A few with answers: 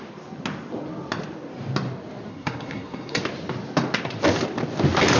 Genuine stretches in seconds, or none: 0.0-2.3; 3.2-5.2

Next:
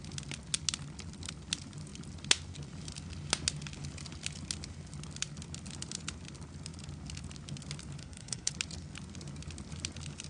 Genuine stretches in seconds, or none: 0.0-8.0; 8.5-10.3

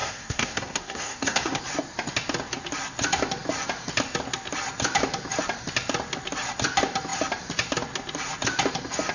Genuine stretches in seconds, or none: 1.6-9.1

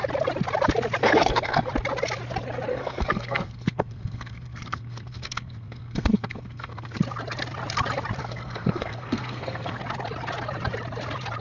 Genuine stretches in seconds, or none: 0.0-1.0; 1.7-2.7; 7.0-8.2; 9.8-11.4

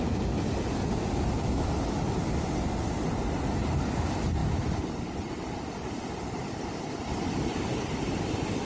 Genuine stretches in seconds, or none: 0.0-8.7

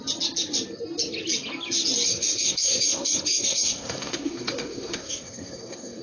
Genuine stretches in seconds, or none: 0.0-2.1

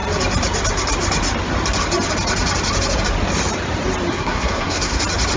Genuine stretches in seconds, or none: 0.0-4.1; 5.0-5.4